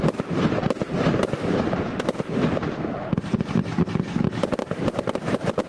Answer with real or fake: real